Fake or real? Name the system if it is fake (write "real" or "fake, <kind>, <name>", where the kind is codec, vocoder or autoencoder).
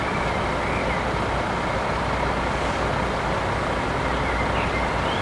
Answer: real